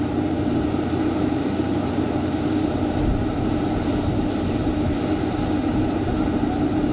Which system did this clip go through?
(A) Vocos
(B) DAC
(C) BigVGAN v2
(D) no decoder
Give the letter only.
C